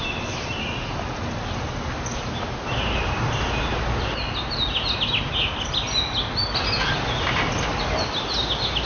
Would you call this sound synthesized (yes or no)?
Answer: no